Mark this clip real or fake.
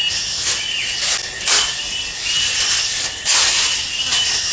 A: real